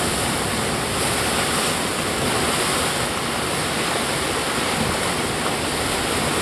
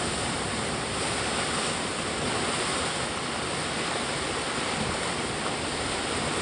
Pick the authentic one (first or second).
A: first